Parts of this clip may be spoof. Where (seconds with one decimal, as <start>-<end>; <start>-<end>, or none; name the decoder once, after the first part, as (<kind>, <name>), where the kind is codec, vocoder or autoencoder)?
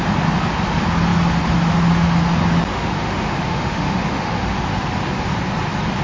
2.7-4.6 (autoencoder, DAC-VAE)